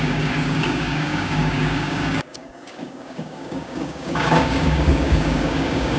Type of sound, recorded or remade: remade